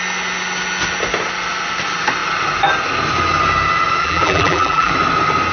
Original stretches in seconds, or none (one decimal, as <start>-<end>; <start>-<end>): 0.0-4.0; 4.9-5.5